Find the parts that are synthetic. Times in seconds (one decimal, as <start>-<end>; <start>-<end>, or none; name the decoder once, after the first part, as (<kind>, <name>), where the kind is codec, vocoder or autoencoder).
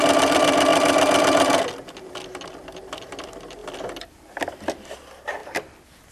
none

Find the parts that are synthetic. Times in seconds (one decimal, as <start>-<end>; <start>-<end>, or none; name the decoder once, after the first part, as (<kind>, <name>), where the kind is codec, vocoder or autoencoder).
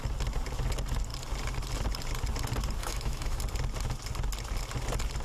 2.8-3.4 (autoencoder, DAC-VAE)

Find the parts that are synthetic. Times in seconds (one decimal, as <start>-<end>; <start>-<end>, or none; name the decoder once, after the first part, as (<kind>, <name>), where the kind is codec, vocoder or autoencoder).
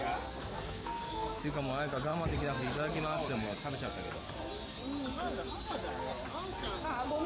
0.4-1.4 (codec, SNAC)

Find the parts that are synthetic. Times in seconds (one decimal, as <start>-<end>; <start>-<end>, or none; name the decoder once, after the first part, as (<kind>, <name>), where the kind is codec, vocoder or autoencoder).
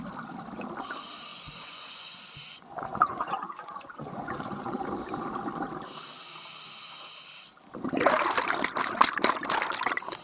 1.3-4.8 (vocoder, Vocos)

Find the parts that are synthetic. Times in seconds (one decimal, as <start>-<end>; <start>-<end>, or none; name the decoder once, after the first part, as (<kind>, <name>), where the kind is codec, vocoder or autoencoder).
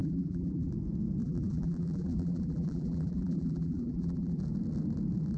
0.0-0.7 (vocoder, BigVGAN v2); 1.2-4.4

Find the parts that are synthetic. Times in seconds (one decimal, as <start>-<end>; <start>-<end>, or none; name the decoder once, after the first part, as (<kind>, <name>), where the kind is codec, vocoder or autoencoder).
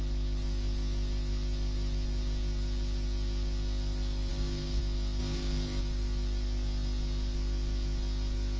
4.3-4.8 (codec, DAC); 5.2-5.8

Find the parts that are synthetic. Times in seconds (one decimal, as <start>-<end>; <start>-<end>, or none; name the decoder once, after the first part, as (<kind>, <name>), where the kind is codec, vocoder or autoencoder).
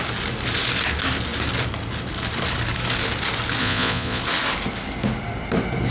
3.6-4.2 (vocoder, Vocos)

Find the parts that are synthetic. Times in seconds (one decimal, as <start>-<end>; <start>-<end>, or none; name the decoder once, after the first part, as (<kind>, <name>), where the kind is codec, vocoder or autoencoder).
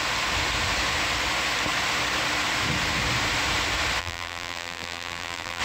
4.0-5.6 (vocoder, BigVGAN v2)